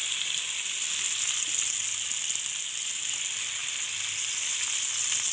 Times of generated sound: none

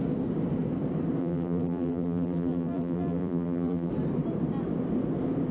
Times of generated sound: 1.2-3.9 (vocoder, BigVGAN v2)